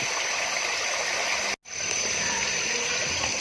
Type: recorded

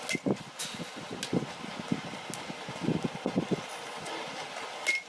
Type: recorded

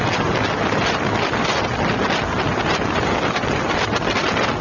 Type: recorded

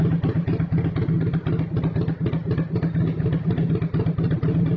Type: recorded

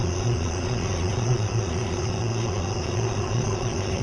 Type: remade